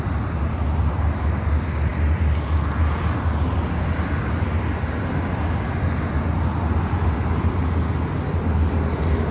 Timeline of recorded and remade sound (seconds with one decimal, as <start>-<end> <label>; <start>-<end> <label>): 0.0-9.3 recorded